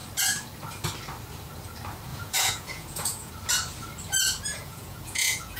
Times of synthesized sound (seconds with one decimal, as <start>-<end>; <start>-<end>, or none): 2.1-3.3; 4.5-5.6